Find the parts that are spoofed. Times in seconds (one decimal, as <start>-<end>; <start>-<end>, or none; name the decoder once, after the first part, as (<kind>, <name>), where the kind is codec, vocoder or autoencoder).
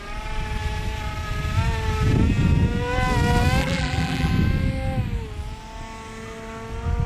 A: 3.6-4.3 (vocoder, BigVGAN v2)